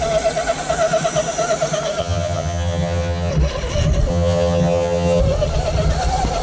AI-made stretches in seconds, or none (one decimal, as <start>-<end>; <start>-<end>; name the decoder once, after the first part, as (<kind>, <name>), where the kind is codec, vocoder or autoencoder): 2.0-3.3 (vocoder, HiFi-GAN); 4.1-5.2